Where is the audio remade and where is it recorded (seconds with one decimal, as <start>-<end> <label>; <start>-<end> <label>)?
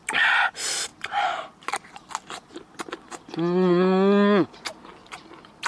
0.0-4.9 recorded; 4.9-5.7 remade